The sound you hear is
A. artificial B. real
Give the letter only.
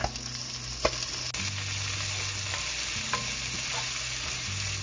B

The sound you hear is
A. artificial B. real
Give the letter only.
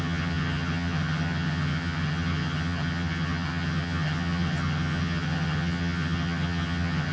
A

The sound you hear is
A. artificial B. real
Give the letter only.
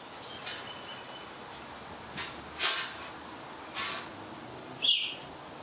B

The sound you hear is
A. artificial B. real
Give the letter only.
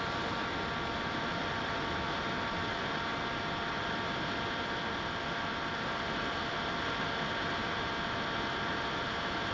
B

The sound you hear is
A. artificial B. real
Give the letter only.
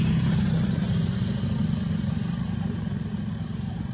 B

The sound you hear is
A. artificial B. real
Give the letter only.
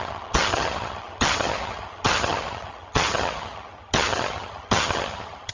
A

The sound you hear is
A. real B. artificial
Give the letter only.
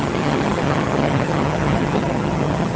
B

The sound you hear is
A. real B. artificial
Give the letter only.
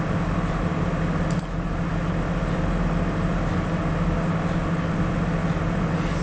A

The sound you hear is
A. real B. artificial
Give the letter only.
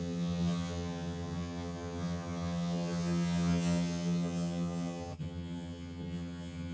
B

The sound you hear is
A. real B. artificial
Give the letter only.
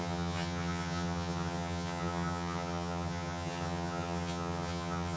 B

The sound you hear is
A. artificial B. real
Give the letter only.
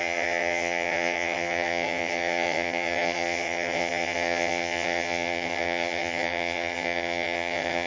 A